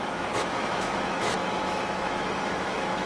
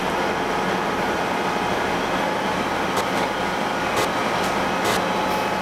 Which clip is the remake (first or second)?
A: first